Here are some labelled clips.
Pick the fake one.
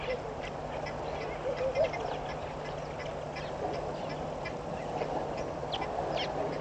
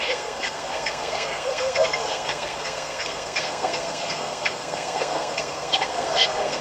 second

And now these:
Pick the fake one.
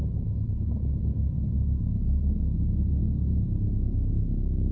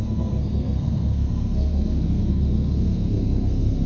second